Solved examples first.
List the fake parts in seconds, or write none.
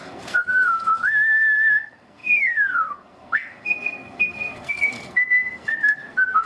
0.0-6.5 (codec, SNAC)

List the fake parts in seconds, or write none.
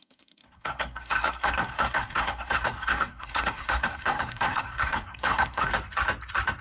0.0-5.7 (codec, SNAC)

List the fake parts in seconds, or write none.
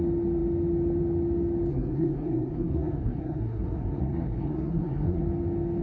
1.7-5.2 (codec, SNAC)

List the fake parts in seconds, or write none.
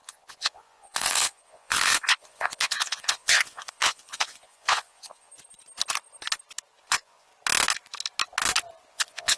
0.0-5.3 (vocoder, Vocos); 6.8-7.3; 8.9-9.4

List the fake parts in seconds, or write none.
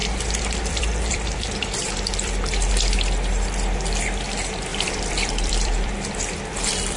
0.0-2.7 (vocoder, BigVGAN v2); 4.7-5.9